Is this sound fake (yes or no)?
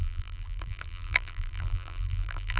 yes